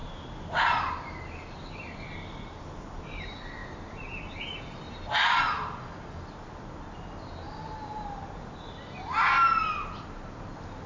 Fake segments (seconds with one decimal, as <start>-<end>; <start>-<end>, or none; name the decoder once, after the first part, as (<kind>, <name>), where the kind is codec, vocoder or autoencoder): none